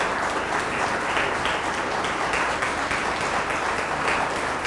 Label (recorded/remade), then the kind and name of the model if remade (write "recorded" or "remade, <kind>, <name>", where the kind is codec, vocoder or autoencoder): recorded